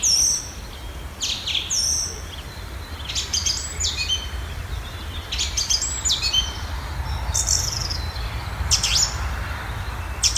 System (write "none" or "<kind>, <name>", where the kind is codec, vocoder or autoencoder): none